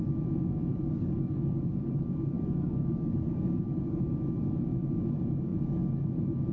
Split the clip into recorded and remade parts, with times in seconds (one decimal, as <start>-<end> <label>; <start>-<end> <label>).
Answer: 0.0-0.7 recorded; 0.7-4.1 remade; 4.1-6.5 recorded